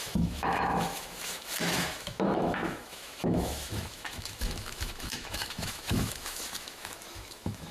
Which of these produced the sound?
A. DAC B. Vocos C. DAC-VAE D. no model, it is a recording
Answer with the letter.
C